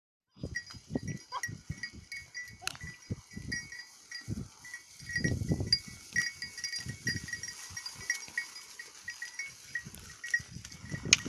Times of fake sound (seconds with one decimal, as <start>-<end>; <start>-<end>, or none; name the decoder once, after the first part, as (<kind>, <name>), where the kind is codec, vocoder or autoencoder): none